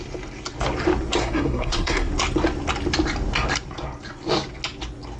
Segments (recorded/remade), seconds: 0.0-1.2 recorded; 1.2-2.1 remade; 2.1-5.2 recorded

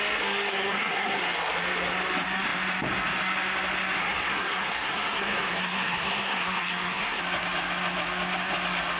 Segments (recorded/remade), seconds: 0.0-0.5 recorded; 0.5-1.2 remade; 1.2-4.0 recorded; 4.0-7.2 remade; 7.2-9.0 recorded